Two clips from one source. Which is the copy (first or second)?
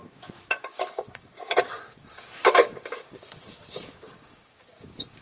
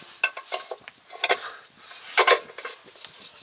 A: first